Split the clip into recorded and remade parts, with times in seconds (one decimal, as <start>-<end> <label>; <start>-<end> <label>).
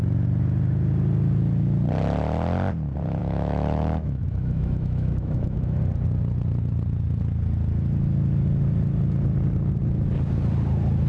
0.0-3.2 recorded; 3.2-5.8 remade; 5.8-11.1 recorded